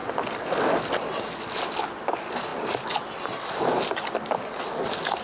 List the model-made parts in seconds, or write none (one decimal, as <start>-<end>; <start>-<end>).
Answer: none